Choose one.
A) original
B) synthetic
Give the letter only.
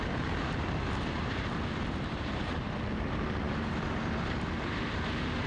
B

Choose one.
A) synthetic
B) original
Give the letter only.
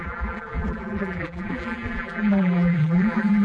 A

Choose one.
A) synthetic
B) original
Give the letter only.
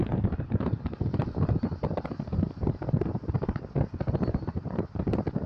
A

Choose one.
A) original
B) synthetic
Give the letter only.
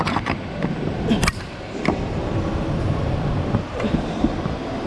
B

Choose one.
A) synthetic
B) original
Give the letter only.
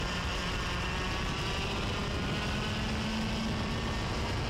B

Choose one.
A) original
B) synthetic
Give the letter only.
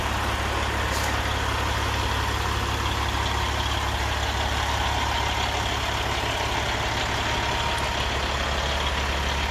A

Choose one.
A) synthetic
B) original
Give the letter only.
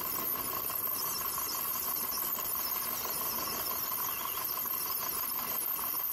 B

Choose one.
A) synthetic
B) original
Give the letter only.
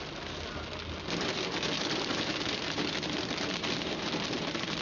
B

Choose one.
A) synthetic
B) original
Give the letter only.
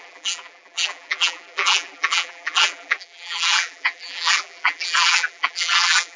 A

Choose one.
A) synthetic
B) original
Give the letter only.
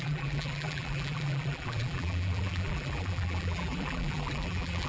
A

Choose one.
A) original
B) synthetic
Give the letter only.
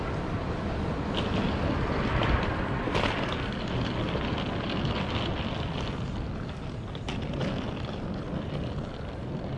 A